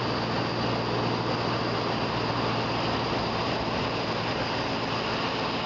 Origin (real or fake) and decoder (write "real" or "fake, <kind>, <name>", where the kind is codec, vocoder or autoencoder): real